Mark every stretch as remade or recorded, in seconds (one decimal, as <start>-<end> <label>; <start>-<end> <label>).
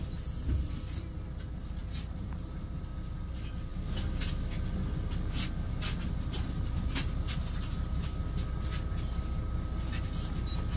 0.0-1.8 recorded; 1.8-2.5 remade; 2.5-10.8 recorded